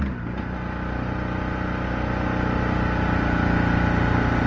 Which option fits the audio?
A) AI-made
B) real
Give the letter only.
B